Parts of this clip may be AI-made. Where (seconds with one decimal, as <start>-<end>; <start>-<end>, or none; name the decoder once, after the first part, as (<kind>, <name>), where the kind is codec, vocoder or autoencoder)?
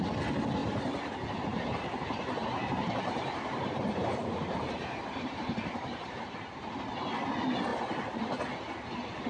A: 1.5-6.2 (vocoder, BigVGAN v2); 7.7-8.3